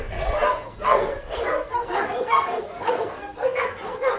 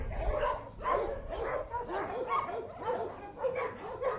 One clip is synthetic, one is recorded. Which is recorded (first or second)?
second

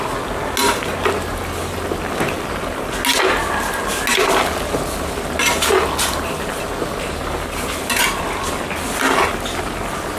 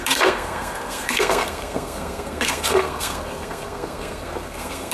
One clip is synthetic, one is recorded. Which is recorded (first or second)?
first